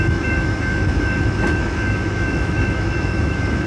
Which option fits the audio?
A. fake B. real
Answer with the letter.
A